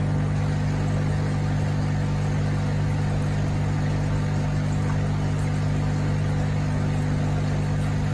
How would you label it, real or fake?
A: real